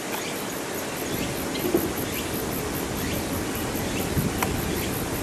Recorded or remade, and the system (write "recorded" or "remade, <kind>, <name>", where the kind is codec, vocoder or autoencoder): recorded